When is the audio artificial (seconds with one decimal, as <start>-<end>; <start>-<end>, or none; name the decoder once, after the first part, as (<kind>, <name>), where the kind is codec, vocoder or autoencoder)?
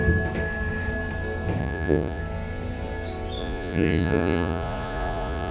1.6-2.2 (vocoder, Vocos); 3.4-5.5